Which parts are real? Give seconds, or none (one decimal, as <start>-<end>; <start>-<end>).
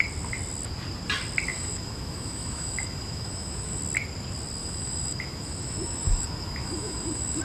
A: 0.0-1.5; 3.8-4.6